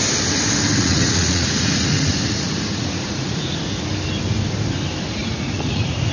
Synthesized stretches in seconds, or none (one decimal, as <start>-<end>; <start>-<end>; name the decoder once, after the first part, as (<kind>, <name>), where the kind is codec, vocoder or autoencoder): 0.8-3.6 (vocoder, Vocos); 5.2-6.1